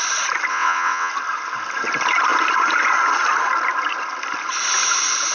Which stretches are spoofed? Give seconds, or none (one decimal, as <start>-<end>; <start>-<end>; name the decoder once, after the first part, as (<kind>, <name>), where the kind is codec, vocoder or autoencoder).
0.5-1.1 (vocoder, WaveNeXt)